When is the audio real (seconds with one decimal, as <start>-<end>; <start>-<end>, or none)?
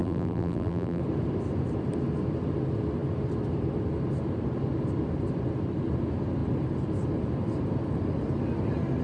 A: 1.0-9.0